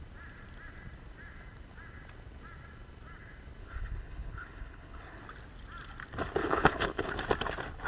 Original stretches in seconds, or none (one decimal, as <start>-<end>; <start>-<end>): 0.0-3.6; 5.2-6.4; 7.1-7.9

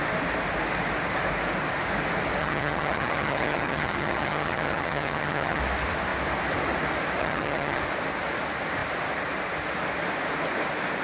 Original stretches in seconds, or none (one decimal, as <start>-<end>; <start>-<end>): 0.0-2.4; 5.6-7.2; 7.8-11.0

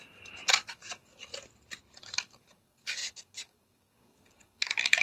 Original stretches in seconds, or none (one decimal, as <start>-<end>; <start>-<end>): 1.3-2.0

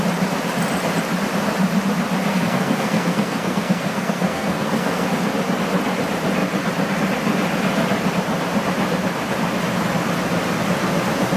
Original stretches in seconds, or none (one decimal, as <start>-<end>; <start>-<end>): 0.0-2.3; 5.3-11.4

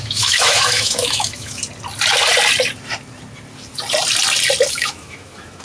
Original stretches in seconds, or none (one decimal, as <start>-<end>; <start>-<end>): 1.6-4.7

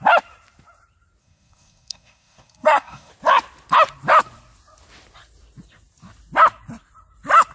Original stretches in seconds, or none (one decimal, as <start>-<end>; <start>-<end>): 0.0-1.2; 3.1-7.5

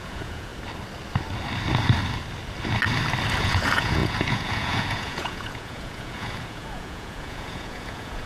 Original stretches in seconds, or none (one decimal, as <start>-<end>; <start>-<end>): 0.5-3.4

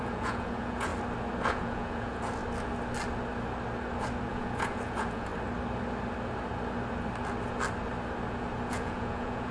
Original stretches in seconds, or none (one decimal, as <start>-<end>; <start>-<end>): 0.9-1.5; 2.4-4.3; 5.3-8.7